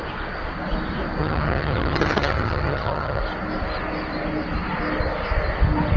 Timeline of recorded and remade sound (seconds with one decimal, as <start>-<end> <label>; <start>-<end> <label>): 0.0-1.2 recorded; 1.2-3.2 remade; 3.2-6.0 recorded